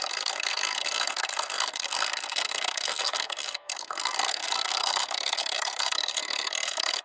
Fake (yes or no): yes